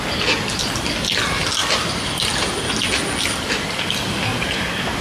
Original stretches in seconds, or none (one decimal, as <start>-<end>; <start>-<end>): 0.0-4.3